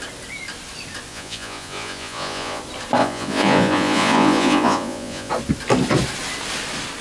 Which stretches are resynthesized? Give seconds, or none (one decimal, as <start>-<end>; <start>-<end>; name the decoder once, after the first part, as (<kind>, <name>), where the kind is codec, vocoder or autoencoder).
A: 1.1-2.6 (vocoder, Vocos); 3.0-5.3

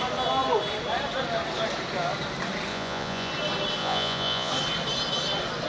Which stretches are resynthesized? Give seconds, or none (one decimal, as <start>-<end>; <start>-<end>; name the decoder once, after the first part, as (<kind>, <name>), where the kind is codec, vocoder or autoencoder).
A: 2.7-3.3 (vocoder, Vocos); 3.8-4.5

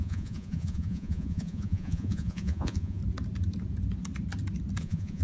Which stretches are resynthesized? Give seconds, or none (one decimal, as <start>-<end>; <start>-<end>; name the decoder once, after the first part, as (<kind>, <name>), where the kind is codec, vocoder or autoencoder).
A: 0.0-3.0 (vocoder, Vocos); 4.8-5.2

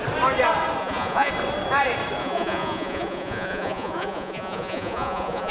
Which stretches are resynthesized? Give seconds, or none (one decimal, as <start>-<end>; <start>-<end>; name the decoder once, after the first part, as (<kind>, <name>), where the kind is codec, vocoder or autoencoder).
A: 0.8-1.3 (vocoder, Vocos); 2.2-5.5

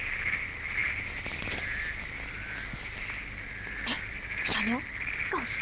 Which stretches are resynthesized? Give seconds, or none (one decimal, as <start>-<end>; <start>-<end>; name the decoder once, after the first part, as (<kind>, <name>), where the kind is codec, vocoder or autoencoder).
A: none

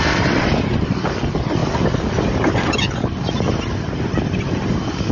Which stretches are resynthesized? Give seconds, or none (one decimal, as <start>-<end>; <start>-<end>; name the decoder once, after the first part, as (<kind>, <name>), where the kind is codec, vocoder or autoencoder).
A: none